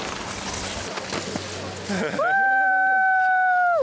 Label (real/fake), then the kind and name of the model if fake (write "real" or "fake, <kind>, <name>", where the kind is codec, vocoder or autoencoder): real